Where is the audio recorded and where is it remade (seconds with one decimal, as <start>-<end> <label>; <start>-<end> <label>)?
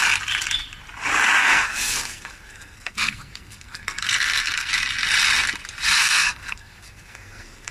0.0-1.4 recorded; 1.4-4.7 remade; 4.7-6.0 recorded; 6.0-7.7 remade